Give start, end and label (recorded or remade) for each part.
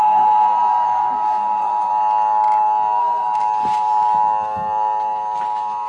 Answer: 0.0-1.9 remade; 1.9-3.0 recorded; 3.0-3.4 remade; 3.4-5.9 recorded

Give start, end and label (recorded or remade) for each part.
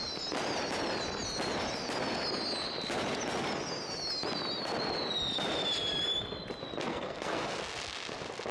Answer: 0.0-6.9 recorded; 6.9-7.6 remade; 7.6-8.5 recorded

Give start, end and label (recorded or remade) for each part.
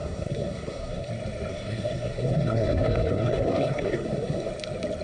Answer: 0.0-1.1 remade; 1.1-1.5 recorded; 1.5-4.5 remade; 4.5-5.0 recorded